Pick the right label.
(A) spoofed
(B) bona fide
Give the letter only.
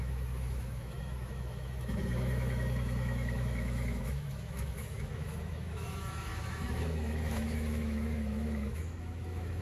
A